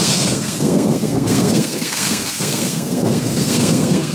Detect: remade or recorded remade